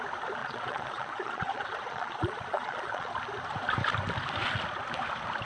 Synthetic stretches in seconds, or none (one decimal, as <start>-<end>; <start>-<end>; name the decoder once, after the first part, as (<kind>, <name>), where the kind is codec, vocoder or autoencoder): 0.4-3.1 (vocoder, Vocos)